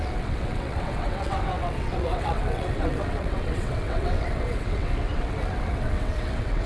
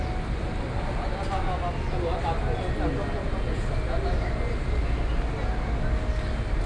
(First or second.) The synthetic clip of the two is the first